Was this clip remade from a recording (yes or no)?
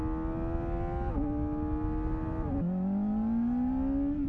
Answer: no